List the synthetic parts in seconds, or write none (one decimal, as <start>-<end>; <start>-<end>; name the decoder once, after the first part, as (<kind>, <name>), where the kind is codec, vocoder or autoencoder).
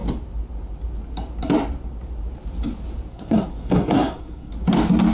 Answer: 3.1-4.5 (codec, SNAC)